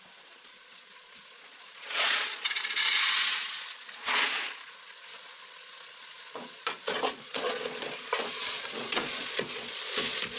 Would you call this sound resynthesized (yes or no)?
yes